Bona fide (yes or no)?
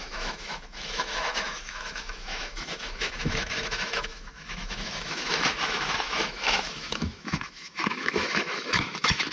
no